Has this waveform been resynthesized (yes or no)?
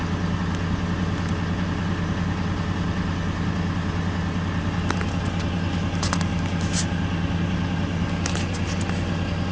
no